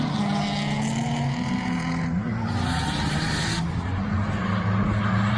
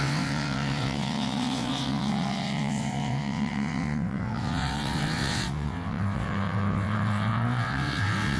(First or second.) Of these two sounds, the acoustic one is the first